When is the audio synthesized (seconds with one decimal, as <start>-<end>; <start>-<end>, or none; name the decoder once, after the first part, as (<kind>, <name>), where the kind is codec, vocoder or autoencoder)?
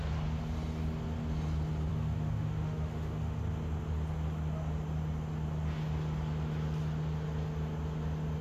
1.9-3.4 (autoencoder, DAC-VAE)